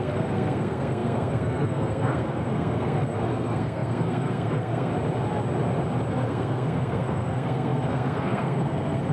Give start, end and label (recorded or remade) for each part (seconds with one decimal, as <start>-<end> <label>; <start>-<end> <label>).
0.0-4.9 remade; 4.9-6.1 recorded; 6.1-9.1 remade

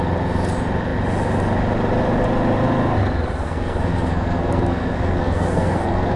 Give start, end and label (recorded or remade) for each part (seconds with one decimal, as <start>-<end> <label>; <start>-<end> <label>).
0.0-3.4 recorded; 3.4-6.2 remade

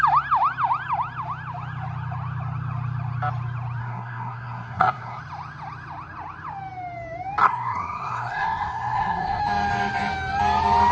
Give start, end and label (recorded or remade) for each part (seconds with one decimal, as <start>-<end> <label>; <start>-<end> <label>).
0.0-3.8 recorded; 3.8-5.2 remade; 5.2-7.4 recorded; 7.4-9.4 remade; 9.4-10.9 recorded

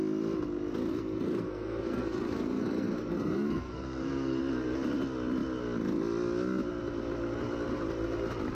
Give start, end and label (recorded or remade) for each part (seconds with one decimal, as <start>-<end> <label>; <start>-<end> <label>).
0.0-0.9 recorded; 0.9-4.4 remade; 4.4-8.5 recorded

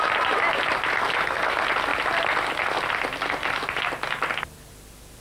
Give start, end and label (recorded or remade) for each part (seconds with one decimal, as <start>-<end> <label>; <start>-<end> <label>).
0.0-5.2 recorded

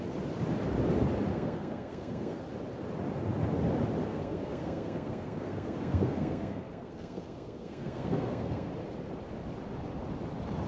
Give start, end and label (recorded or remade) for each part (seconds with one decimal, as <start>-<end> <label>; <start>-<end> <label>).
0.0-1.3 recorded; 1.3-2.4 remade; 2.4-4.1 recorded; 4.1-8.7 remade; 8.7-10.7 recorded